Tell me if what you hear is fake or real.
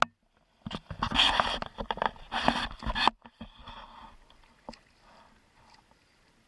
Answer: real